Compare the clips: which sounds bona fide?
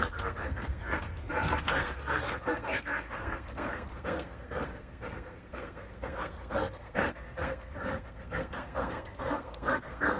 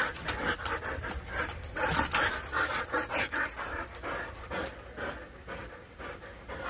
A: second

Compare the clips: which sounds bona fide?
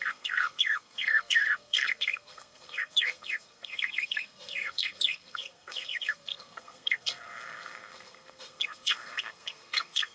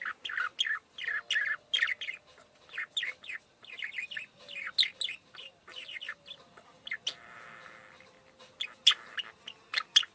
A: second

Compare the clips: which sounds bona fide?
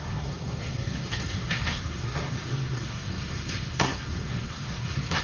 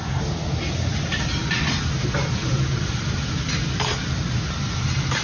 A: second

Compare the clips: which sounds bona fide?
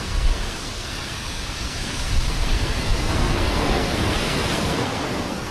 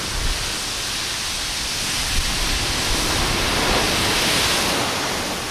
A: second